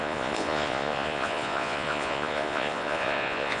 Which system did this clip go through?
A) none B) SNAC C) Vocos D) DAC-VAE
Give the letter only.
C